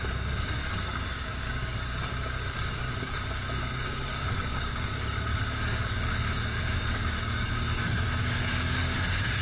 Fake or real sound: fake